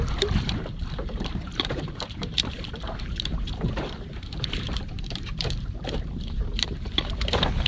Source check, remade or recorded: remade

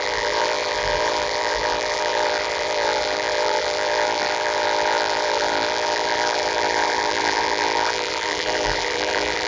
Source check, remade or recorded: remade